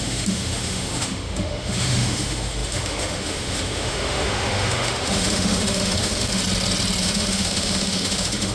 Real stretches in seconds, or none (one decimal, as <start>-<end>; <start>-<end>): 6.4-7.0